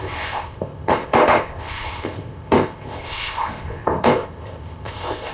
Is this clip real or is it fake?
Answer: fake